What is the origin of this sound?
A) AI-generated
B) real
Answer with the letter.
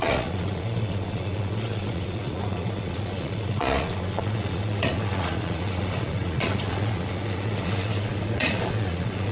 A